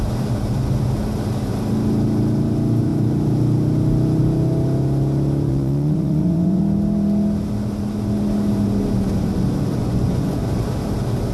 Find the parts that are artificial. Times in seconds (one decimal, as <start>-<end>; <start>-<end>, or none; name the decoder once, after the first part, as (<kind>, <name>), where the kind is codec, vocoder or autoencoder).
5.5-6.6 (vocoder, Vocos); 9.8-10.4